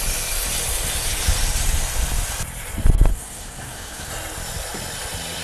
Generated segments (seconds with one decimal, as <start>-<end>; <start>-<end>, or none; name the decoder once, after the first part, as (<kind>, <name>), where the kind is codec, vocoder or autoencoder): 3.1-4.1 (codec, SNAC)